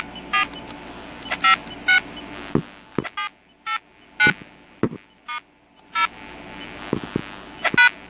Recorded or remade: recorded